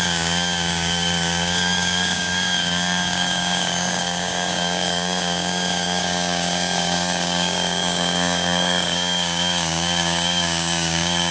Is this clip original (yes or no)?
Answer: no